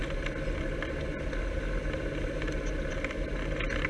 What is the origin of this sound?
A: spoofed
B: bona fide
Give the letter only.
B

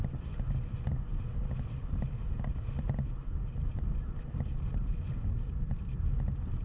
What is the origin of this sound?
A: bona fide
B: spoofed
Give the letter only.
A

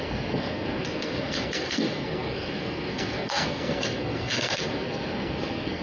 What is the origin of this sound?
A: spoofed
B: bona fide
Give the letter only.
A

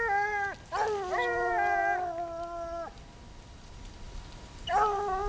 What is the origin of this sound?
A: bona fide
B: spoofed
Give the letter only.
A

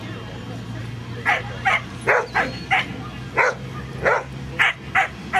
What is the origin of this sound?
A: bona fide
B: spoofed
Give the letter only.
A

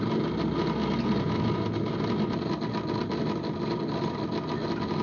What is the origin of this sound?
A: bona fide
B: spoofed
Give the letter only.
A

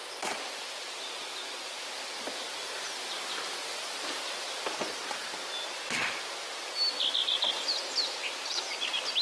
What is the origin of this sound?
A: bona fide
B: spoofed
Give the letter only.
A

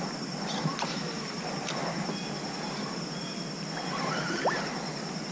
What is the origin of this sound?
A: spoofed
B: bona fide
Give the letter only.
B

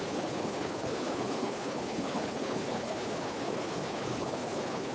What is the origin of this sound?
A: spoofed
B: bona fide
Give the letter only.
A